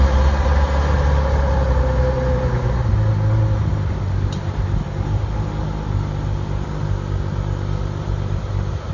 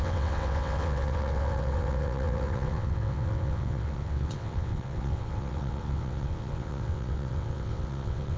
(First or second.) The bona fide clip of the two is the first